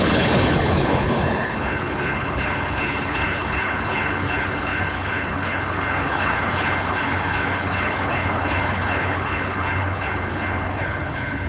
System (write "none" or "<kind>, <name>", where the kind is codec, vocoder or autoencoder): codec, HILCodec